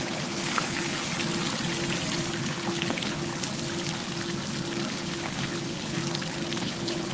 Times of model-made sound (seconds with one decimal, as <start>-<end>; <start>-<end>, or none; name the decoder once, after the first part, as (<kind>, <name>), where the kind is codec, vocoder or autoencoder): 0.0-1.0 (codec, HILCodec); 2.4-3.3; 4.9-6.0; 6.6-7.1